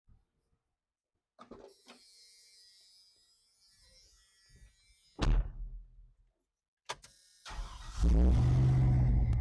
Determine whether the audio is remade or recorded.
recorded